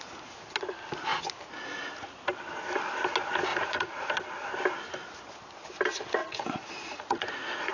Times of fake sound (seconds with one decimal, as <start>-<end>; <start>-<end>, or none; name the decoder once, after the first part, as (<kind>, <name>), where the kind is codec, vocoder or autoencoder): 3.5-4.1 (vocoder, Vocos); 6.2-7.7